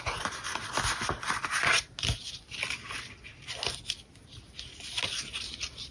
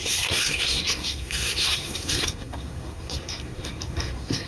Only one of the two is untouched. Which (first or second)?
first